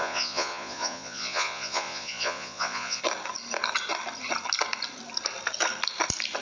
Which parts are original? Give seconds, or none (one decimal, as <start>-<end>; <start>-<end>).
3.0-6.4